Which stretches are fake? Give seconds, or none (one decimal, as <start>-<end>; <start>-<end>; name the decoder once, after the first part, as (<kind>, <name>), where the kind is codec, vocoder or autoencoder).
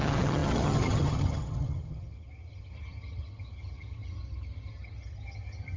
0.0-5.8 (vocoder, HiFi-GAN)